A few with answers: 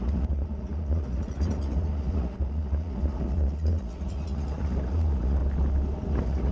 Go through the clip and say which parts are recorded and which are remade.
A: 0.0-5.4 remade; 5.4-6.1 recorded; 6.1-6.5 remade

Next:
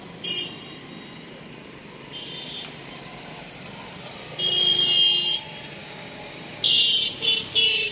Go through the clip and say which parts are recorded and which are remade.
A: 0.0-5.8 recorded; 5.8-6.8 remade; 6.8-7.9 recorded

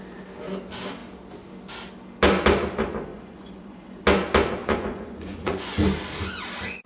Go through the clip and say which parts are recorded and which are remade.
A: 0.0-3.1 recorded; 3.1-4.0 remade; 4.0-4.6 recorded; 4.6-5.8 remade; 5.8-6.9 recorded

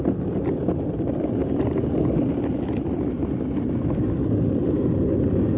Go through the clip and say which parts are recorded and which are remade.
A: 0.0-5.6 recorded

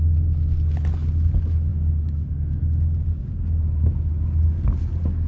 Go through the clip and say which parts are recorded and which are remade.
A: 0.0-5.3 recorded

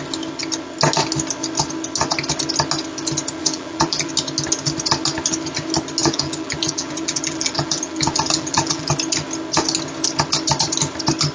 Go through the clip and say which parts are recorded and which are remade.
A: 0.0-3.4 recorded; 3.4-4.1 remade; 4.1-6.0 recorded; 6.0-8.9 remade; 8.9-11.3 recorded

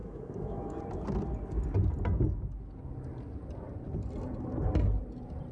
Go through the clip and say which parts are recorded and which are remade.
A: 0.0-0.8 remade; 0.8-5.5 recorded